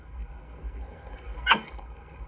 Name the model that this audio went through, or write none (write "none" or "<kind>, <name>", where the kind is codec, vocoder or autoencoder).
codec, SNAC